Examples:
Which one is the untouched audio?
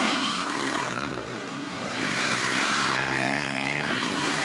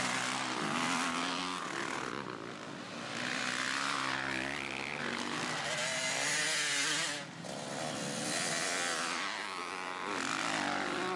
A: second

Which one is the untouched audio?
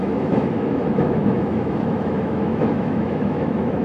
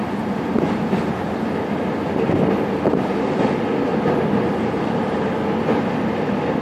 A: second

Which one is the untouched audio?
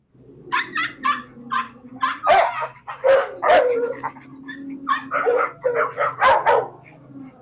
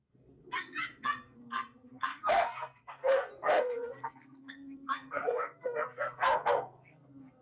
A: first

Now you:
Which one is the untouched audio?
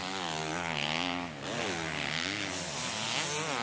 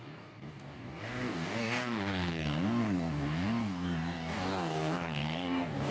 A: first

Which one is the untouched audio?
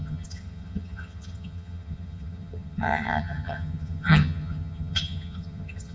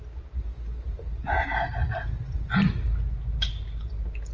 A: second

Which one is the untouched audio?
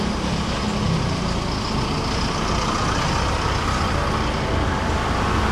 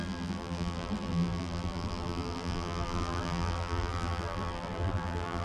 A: first